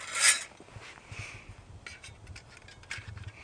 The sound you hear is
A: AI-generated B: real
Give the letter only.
B